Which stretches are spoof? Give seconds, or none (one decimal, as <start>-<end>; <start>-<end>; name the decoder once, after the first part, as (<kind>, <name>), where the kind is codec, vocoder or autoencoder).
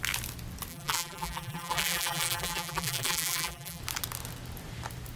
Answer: 0.7-3.8 (vocoder, BigVGAN v2)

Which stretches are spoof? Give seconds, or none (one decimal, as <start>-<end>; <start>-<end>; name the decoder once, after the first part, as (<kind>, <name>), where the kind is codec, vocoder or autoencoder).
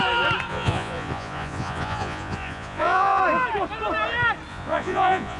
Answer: 0.5-3.2 (vocoder, Vocos); 4.5-5.4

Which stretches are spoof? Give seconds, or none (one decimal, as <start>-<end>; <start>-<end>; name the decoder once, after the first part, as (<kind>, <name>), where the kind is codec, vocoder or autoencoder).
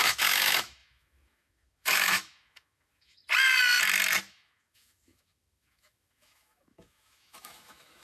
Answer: 0.0-3.2 (autoencoder, DAC-VAE); 4.3-8.0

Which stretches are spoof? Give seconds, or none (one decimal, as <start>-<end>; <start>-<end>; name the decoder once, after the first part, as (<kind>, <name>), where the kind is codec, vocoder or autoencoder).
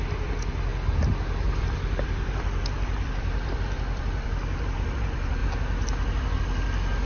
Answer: 0.0-0.7 (vocoder, BigVGAN v2); 1.6-5.4; 6.4-7.1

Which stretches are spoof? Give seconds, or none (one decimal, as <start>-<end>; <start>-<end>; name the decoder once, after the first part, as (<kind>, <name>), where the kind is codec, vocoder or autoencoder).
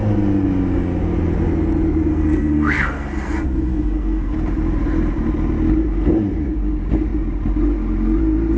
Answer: 2.1-4.3 (codec, SNAC)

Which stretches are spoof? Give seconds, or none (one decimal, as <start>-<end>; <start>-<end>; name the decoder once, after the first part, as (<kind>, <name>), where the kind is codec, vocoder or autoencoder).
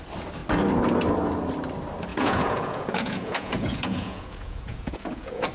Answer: 2.1-5.5 (vocoder, Vocos)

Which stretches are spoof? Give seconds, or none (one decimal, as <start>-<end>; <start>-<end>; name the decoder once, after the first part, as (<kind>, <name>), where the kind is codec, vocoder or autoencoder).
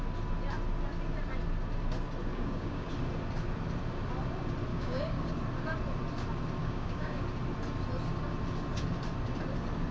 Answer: 2.3-2.9 (codec, DAC); 4.7-5.2; 6.6-7.2